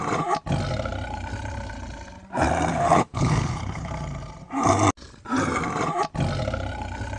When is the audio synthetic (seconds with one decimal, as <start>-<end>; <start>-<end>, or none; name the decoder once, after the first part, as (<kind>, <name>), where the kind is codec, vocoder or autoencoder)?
2.7-3.9 (codec, HILCodec)